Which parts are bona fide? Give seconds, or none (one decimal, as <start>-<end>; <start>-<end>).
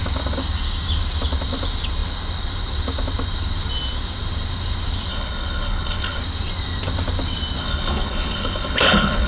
0.0-5.1; 6.2-7.6